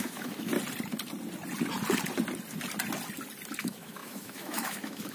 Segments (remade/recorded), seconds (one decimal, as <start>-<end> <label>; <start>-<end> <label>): 0.0-0.5 remade; 0.5-3.6 recorded; 3.6-5.1 remade